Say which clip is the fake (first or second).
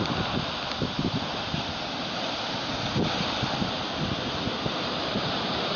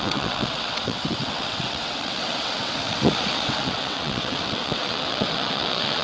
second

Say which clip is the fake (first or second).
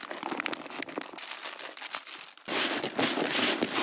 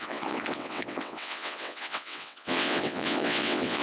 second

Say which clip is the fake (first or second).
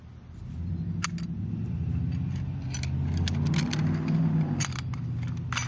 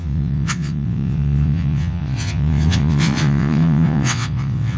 second